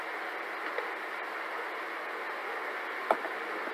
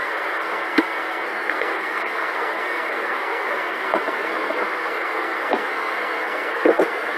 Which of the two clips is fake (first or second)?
second